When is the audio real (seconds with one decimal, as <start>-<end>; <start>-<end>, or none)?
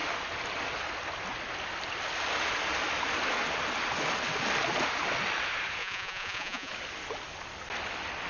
0.0-5.8; 6.7-8.3